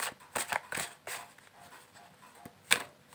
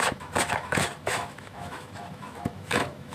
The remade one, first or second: second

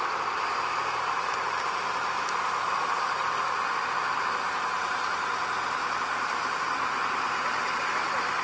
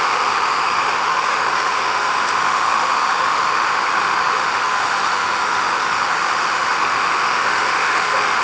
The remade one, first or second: second